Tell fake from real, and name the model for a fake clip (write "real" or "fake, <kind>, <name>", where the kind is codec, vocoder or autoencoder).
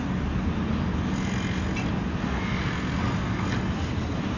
real